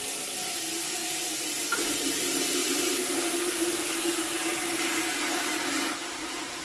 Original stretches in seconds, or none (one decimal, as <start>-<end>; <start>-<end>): 0.0-6.6